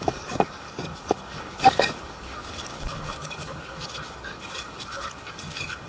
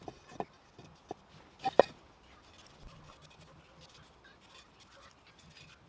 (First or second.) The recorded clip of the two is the second